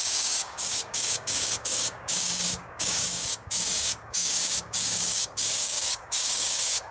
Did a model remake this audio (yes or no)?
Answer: yes